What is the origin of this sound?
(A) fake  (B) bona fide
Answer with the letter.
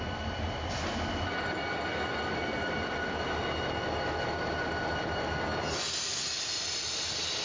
B